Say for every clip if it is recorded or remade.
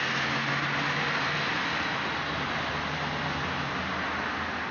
recorded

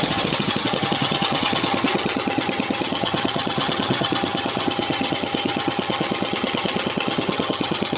remade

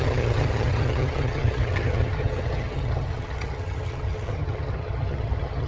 remade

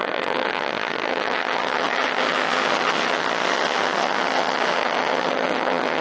remade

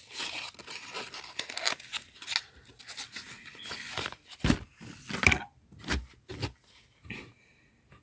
recorded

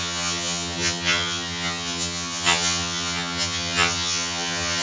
remade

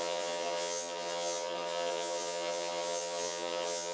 remade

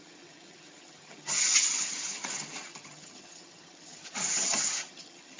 remade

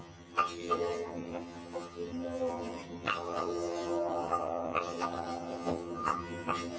remade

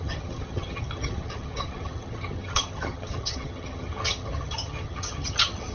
remade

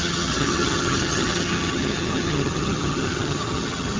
remade